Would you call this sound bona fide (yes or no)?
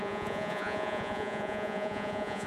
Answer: no